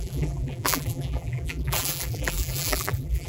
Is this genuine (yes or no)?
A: no